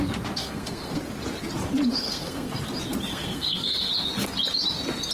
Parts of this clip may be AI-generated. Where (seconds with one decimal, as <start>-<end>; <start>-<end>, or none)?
0.4-1.0; 1.9-2.5; 3.1-3.9